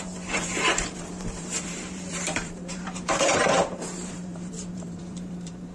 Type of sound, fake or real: fake